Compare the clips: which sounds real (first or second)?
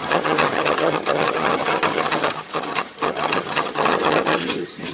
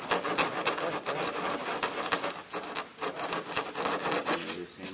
second